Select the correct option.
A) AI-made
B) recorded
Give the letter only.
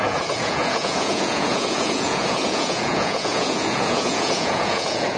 A